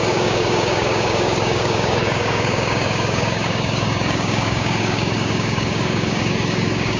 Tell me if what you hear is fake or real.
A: fake